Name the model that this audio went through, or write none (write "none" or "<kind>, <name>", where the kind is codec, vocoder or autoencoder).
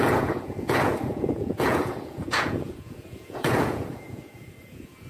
vocoder, Vocos